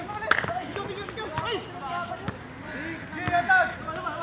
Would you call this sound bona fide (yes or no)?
yes